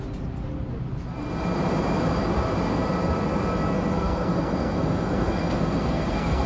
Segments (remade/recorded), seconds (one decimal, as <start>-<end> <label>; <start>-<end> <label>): 0.0-3.9 recorded; 3.9-6.5 remade